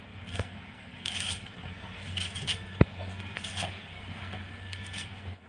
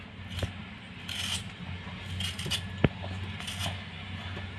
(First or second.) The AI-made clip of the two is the first